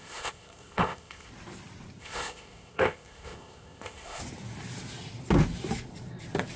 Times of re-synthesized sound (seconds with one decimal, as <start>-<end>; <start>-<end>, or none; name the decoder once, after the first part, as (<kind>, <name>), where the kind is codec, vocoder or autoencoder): 0.0-1.3 (codec, ZipCodec); 2.0-4.2